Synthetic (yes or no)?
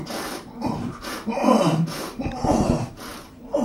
yes